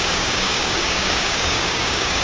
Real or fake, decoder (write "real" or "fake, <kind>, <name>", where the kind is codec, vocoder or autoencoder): fake, codec, DAC